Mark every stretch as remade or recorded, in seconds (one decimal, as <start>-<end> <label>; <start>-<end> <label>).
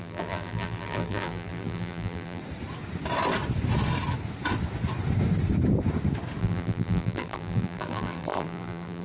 0.0-2.4 remade; 2.4-6.4 recorded; 6.4-9.0 remade